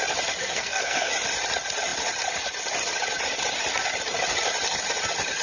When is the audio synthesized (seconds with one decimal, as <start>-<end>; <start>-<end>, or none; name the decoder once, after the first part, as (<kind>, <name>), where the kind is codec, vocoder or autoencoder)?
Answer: 0.4-1.1 (codec, SNAC)